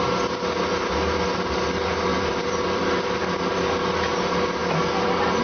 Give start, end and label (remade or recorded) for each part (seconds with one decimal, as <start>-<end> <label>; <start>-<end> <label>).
0.0-2.1 recorded; 2.1-2.8 remade; 2.8-5.4 recorded